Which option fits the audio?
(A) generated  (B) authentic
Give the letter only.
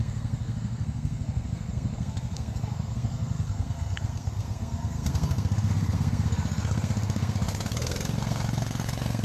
A